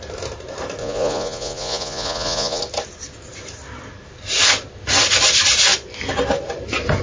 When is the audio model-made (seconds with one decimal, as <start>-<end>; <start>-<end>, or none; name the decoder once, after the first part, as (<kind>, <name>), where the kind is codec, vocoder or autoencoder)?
0.8-2.6 (vocoder, Vocos)